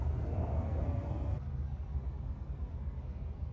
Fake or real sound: fake